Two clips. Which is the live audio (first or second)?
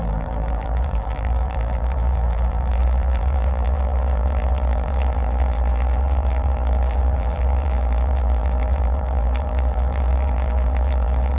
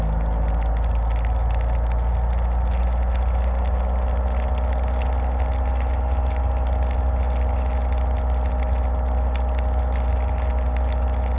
second